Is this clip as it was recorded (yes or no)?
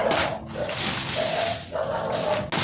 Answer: yes